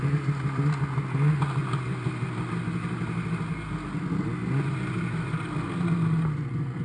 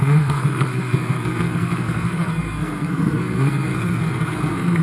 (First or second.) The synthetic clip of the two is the second